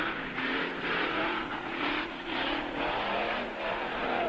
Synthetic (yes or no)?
yes